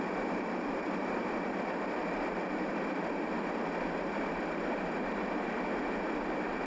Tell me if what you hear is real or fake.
real